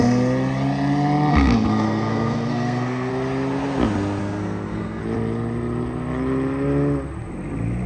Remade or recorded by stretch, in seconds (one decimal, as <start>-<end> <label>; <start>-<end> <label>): 0.0-1.3 recorded; 1.3-3.1 remade; 3.1-4.2 recorded; 4.2-5.0 remade; 5.0-7.9 recorded